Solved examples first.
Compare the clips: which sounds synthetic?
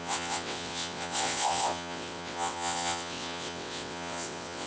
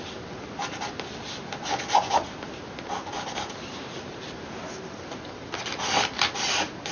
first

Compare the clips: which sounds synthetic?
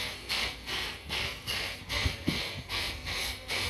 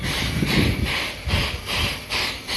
first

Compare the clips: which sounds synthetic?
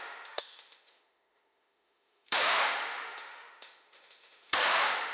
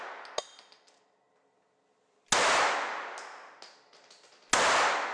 first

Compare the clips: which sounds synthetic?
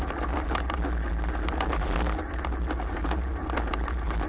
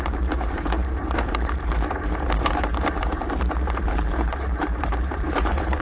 second